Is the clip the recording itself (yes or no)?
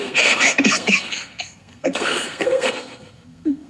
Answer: no